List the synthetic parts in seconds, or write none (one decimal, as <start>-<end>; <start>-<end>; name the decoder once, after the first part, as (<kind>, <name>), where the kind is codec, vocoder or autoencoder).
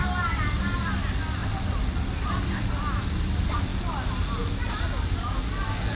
none